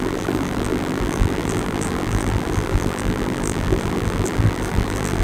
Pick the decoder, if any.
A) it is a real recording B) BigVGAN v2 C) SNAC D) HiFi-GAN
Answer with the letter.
B